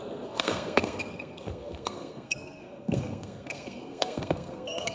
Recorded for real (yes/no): no